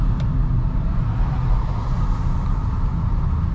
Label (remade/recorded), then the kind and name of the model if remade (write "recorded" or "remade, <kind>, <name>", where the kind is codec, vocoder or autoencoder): recorded